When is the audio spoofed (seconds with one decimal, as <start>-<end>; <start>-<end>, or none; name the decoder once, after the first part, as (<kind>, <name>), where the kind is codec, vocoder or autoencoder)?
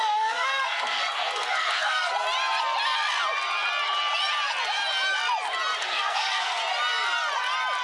0.0-2.1 (codec, SNAC); 5.8-6.6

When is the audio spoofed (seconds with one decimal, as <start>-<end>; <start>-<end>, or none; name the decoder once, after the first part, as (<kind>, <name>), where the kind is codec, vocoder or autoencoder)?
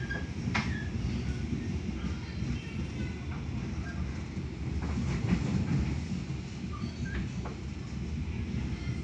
none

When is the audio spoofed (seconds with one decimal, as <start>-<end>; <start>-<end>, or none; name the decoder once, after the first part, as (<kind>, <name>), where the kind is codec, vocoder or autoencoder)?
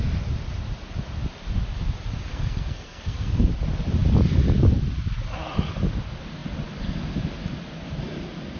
2.3-3.5 (codec, SNAC)